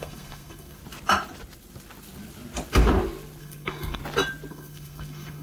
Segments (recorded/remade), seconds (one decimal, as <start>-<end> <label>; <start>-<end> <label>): 0.0-0.8 remade; 0.8-3.4 recorded; 3.4-4.0 remade; 4.0-4.5 recorded; 4.5-5.4 remade